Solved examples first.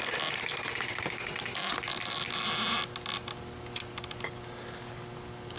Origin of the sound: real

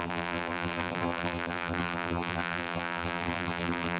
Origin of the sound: fake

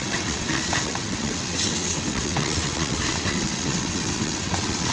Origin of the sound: fake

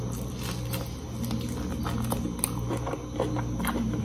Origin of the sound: real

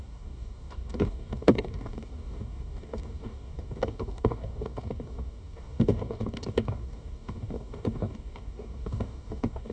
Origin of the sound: fake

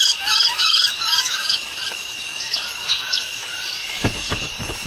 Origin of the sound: fake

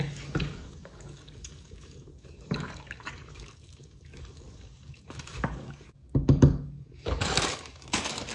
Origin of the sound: fake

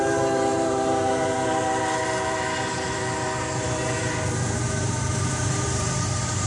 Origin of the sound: fake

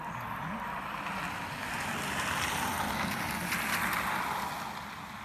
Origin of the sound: real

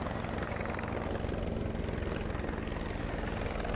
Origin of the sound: real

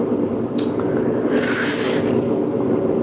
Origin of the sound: real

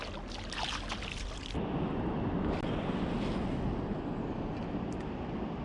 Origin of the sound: real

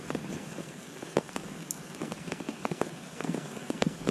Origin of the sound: fake